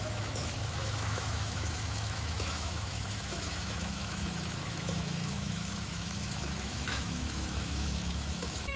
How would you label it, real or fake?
fake